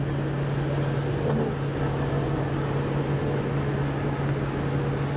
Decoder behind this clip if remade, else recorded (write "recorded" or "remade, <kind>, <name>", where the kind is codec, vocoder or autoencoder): recorded